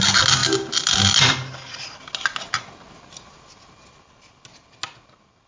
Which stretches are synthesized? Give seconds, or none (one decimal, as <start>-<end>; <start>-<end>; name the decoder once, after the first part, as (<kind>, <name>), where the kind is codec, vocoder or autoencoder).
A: none